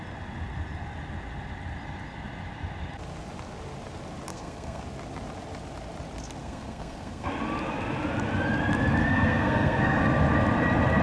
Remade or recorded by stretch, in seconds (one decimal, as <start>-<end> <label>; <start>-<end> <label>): 0.0-4.3 recorded; 4.3-4.8 remade; 4.8-6.4 recorded; 6.4-7.3 remade; 7.3-9.0 recorded; 9.0-10.0 remade; 10.0-11.0 recorded